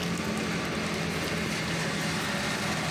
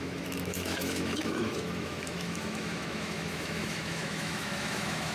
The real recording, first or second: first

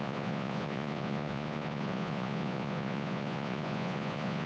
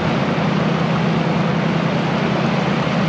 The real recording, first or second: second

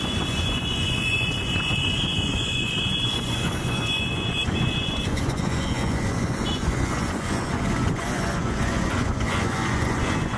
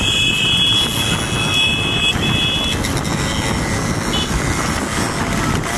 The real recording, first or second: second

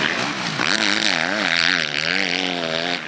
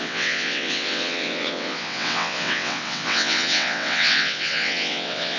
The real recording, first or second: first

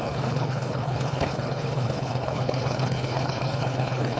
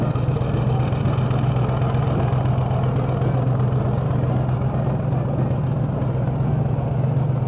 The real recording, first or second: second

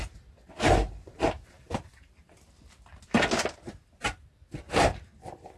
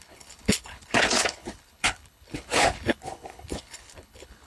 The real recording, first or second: first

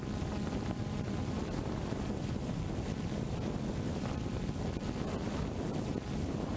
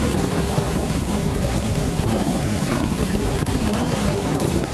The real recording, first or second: first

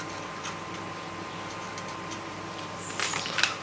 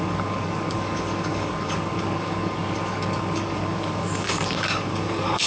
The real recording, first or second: first